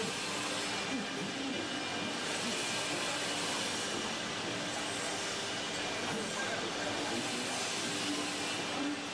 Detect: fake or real real